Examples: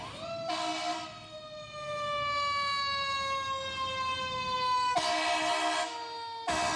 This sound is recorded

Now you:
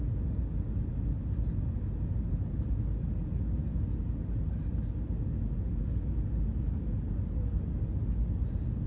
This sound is recorded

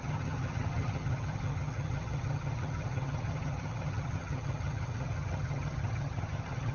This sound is remade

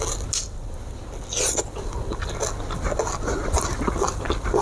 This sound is recorded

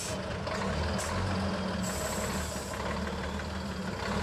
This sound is recorded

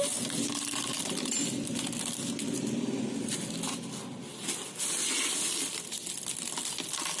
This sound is recorded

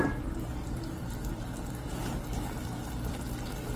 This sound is remade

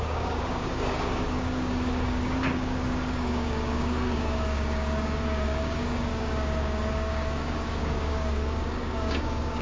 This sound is remade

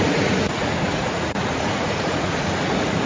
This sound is remade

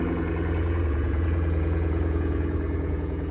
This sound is remade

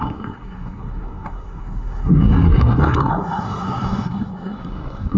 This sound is remade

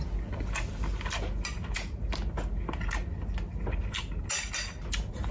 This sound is recorded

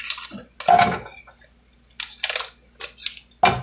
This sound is recorded